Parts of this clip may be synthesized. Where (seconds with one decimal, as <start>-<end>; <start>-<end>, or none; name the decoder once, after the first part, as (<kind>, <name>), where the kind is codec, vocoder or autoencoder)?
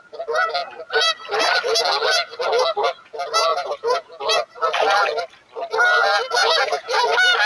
3.5-4.1 (vocoder, Vocos); 6.4-7.0